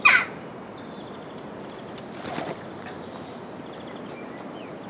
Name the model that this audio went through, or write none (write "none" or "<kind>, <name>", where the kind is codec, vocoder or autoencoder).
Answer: none